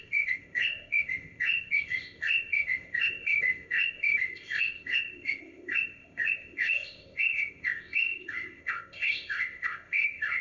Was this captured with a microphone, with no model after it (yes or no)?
no